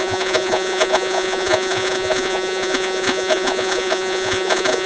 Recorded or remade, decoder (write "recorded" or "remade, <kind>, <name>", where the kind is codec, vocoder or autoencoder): remade, vocoder, Vocos